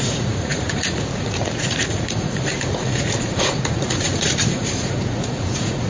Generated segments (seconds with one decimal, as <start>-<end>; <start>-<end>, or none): 0.0-5.9